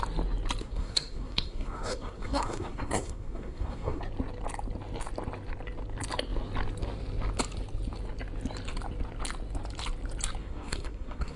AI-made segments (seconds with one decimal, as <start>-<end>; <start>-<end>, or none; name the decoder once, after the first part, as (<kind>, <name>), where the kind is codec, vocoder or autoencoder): 0.6-4.0 (codec, SNAC); 10.4-11.4